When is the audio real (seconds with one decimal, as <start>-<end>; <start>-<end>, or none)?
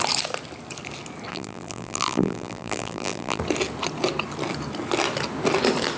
0.0-1.3; 3.4-6.0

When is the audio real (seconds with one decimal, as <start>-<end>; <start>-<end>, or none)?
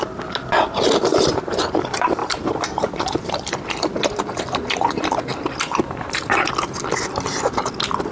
0.0-1.1; 1.8-2.2; 6.5-8.1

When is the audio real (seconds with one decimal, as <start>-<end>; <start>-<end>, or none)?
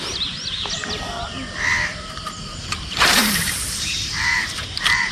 0.0-1.9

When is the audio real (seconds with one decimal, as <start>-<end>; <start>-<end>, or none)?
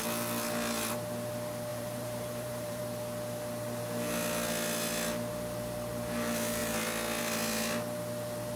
0.0-1.7; 2.8-8.6